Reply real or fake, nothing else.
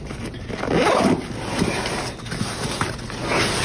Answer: real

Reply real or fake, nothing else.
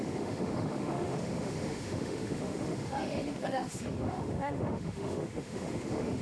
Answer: fake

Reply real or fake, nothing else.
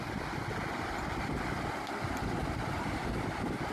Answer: real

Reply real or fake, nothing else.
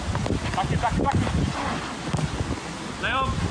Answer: real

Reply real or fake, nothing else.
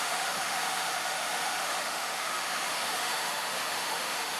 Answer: fake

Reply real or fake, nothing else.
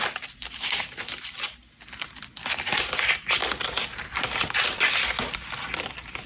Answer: real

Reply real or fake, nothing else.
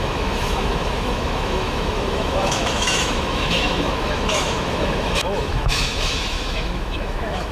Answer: fake